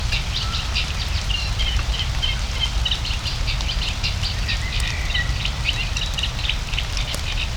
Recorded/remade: recorded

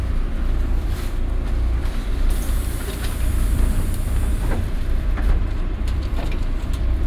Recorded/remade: remade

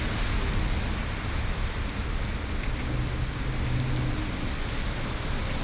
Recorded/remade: recorded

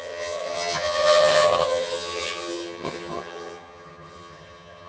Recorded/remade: remade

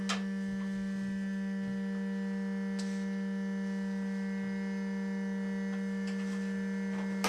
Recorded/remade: recorded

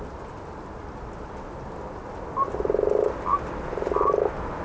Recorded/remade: recorded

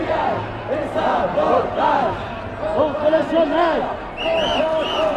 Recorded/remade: recorded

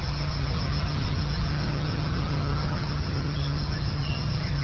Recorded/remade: remade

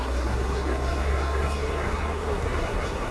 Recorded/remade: remade